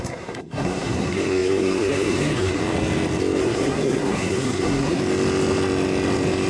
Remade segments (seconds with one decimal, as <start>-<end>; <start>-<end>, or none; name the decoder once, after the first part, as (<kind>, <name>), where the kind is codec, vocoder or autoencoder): 0.0-2.6 (codec, SNAC); 3.4-5.0